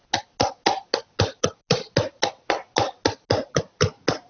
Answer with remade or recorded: recorded